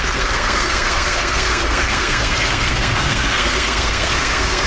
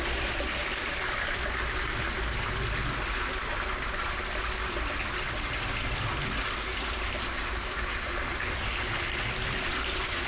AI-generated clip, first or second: first